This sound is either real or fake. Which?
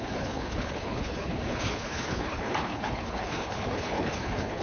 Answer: fake